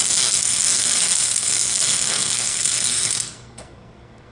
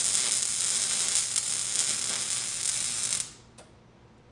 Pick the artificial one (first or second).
first